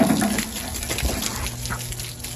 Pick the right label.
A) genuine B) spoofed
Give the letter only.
A